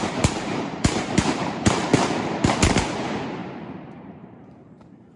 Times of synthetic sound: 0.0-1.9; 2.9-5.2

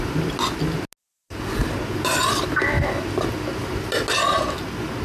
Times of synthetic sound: none

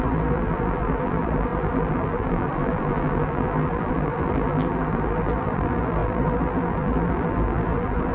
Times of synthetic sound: 0.0-8.1

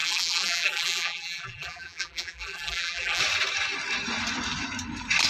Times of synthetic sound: 0.0-3.2

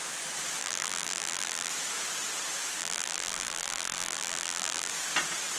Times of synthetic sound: 0.6-1.7; 2.8-4.9

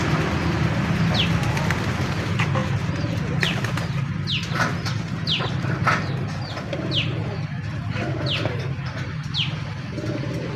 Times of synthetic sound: 2.6-4.1

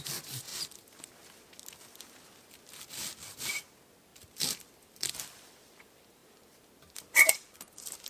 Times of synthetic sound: 4.1-5.8

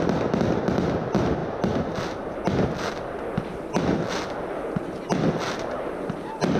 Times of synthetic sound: none